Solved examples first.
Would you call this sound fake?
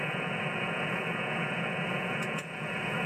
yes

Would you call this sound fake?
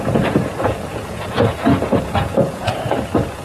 yes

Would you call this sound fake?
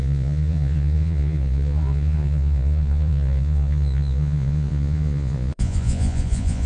yes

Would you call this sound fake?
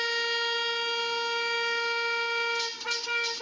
no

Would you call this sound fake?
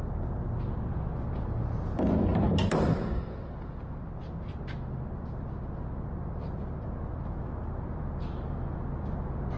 no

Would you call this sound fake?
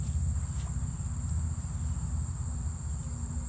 no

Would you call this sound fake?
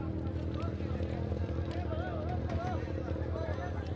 no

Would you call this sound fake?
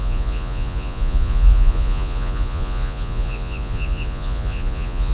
yes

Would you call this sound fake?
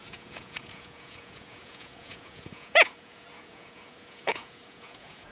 yes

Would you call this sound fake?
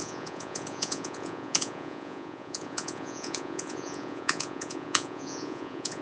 yes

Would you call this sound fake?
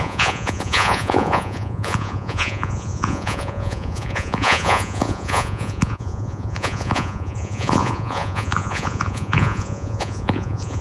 yes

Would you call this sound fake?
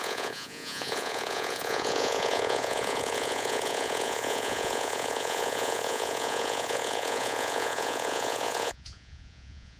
yes